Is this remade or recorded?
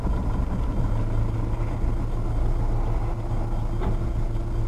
recorded